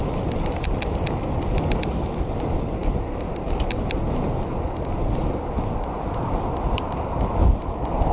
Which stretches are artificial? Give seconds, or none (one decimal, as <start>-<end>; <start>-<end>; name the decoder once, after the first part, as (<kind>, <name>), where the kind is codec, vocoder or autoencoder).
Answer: none